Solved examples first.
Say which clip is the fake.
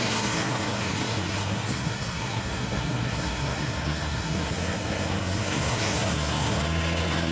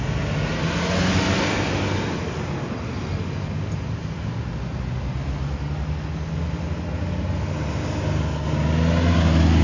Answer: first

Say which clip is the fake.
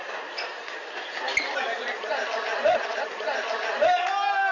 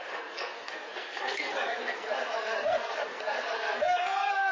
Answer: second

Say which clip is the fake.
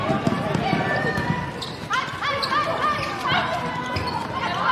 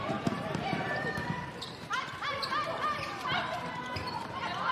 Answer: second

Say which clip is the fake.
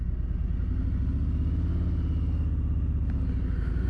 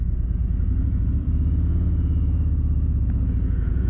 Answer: second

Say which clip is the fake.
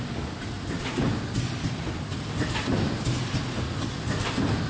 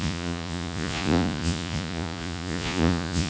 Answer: second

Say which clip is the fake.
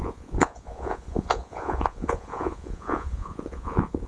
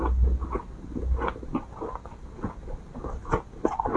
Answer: first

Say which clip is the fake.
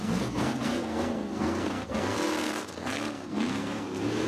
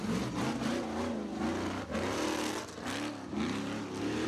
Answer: first